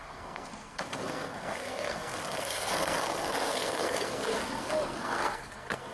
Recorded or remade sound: remade